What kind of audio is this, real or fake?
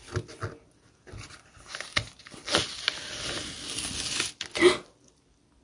real